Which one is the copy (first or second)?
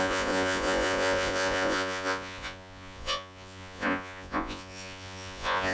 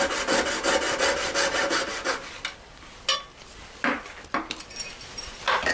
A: first